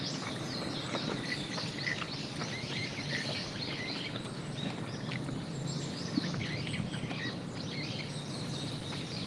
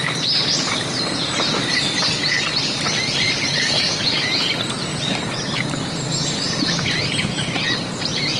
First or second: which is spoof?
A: second